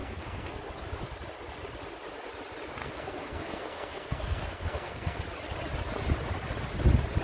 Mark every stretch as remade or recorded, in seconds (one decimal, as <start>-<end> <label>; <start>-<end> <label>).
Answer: 0.0-0.6 remade; 0.6-2.8 recorded; 2.8-5.2 remade; 5.2-7.2 recorded